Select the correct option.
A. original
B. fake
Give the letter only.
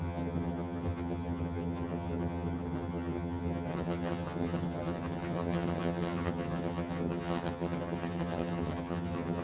B